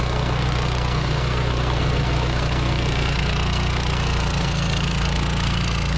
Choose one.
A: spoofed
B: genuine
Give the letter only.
A